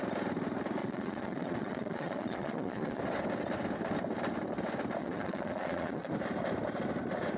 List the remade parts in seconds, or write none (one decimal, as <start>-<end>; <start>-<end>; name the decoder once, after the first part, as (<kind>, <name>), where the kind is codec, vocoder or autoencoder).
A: 0.8-3.0 (vocoder, Vocos); 5.0-6.1